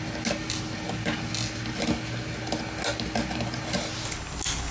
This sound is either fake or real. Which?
real